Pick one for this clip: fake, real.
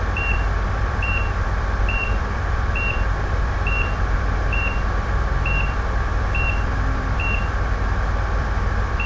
fake